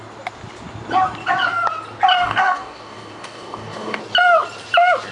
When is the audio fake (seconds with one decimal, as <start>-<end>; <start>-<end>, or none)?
2.1-4.0